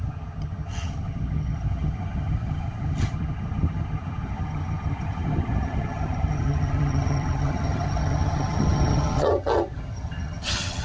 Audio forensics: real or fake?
fake